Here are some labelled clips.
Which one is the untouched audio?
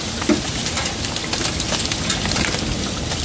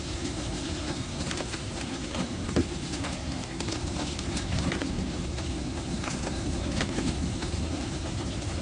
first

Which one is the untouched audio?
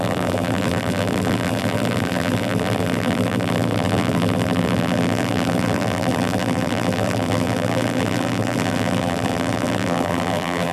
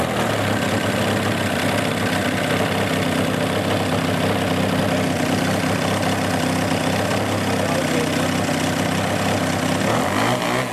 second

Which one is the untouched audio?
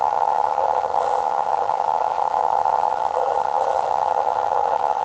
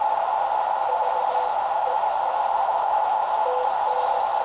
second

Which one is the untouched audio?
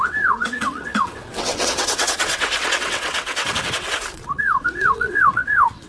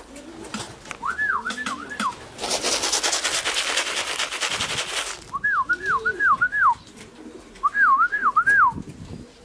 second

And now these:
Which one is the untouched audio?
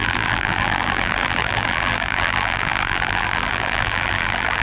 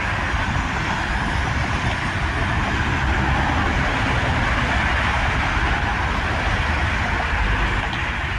second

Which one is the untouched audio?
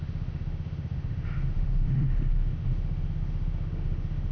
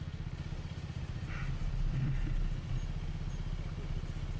second